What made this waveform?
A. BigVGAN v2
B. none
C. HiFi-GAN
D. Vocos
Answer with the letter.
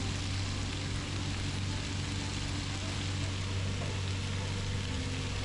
B